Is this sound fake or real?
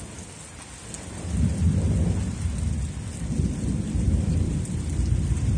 real